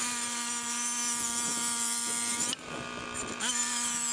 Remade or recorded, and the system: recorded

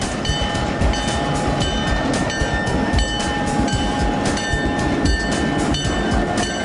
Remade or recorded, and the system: recorded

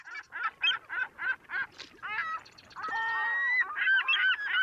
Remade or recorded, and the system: recorded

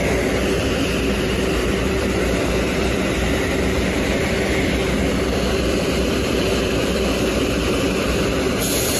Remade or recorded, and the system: remade, vocoder, BigVGAN v2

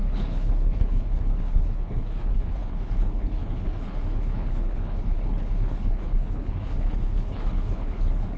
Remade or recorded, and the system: remade, codec, HILCodec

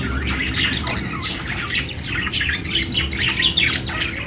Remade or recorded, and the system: recorded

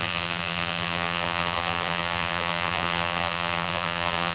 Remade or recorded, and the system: remade, vocoder, BigVGAN v2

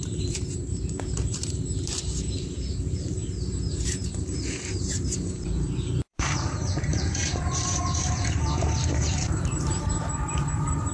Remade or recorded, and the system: remade, vocoder, BigVGAN v2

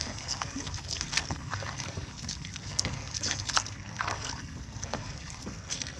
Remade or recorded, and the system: remade, codec, SNAC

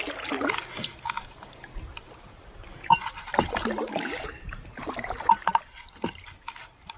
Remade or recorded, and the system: recorded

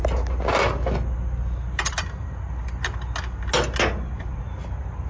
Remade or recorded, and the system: recorded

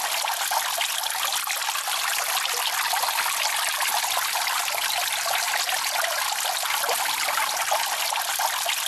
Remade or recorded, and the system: recorded